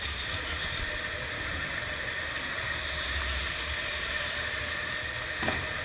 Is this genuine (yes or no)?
yes